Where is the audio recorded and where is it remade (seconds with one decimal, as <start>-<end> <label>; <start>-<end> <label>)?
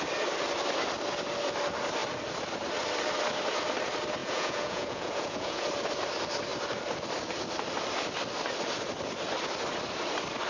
0.0-4.2 recorded; 4.2-5.7 remade; 5.7-10.5 recorded